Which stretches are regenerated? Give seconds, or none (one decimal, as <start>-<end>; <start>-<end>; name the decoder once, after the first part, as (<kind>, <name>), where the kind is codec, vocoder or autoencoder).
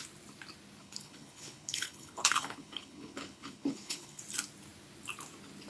0.8-4.2 (codec, HILCodec)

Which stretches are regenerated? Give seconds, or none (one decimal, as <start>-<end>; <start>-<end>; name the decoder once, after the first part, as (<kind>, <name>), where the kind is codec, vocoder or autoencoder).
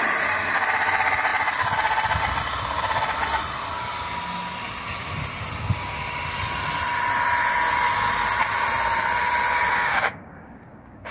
9.7-11.1 (codec, DAC)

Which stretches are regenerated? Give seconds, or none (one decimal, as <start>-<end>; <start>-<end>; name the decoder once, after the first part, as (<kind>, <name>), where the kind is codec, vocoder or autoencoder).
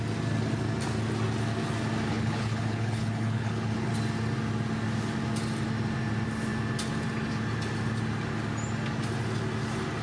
2.1-3.9 (codec, HILCodec)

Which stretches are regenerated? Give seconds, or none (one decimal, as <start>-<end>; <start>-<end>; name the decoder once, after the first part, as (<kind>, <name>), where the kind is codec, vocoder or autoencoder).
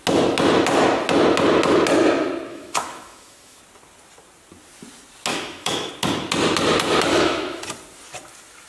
2.5-3.6 (autoencoder, DAC-VAE); 5.3-5.9; 7.1-7.6